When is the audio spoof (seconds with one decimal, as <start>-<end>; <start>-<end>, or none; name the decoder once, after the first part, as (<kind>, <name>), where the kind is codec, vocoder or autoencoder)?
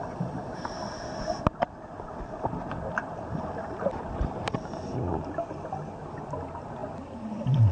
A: none